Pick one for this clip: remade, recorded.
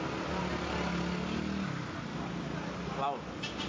recorded